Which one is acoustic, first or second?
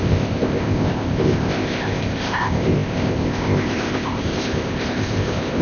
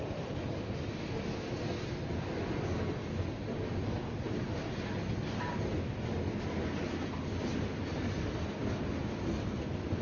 second